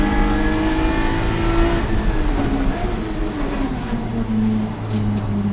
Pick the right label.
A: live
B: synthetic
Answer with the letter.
A